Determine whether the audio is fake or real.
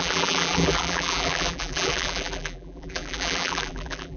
fake